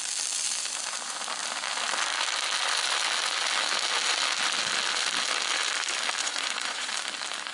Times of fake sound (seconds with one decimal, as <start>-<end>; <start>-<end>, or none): 6.2-6.9